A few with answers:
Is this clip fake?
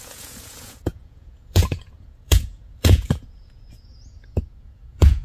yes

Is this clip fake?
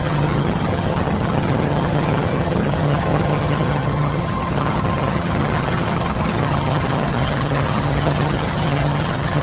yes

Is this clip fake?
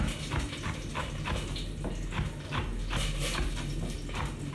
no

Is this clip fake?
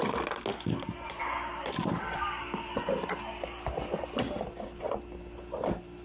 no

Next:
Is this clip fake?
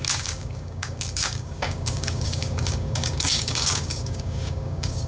yes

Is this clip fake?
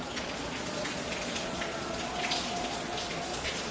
yes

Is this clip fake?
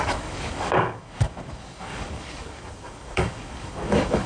yes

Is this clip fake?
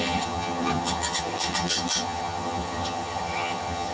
yes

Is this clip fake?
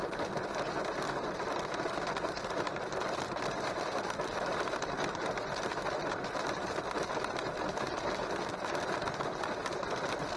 no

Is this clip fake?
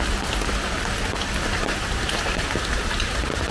no